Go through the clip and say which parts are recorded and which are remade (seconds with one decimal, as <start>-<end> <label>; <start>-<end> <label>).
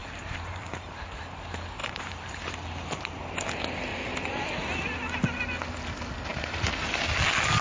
0.0-1.2 remade; 1.2-1.8 recorded; 1.8-2.5 remade; 2.5-3.9 recorded; 3.9-4.5 remade; 4.5-6.3 recorded; 6.3-7.0 remade; 7.0-7.6 recorded